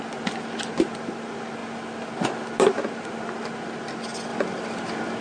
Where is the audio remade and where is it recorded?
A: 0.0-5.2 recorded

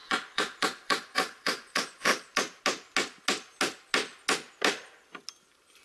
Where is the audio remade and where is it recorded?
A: 0.0-2.1 remade; 2.1-5.8 recorded

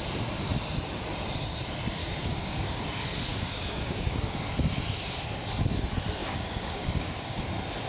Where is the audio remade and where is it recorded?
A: 0.0-2.0 recorded; 2.0-2.8 remade; 2.8-3.3 recorded; 3.3-4.4 remade; 4.4-6.2 recorded; 6.2-7.4 remade; 7.4-7.9 recorded

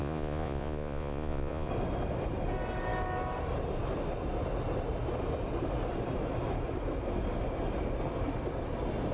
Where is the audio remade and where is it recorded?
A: 0.0-1.7 remade; 1.7-9.1 recorded